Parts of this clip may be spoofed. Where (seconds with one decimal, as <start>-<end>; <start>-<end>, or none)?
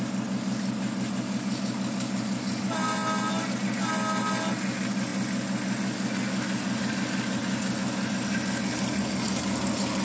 none